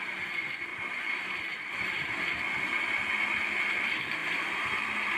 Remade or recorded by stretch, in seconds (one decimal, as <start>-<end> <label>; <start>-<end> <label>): 0.0-0.7 recorded; 0.7-2.1 remade; 2.1-4.2 recorded; 4.2-4.8 remade; 4.8-5.2 recorded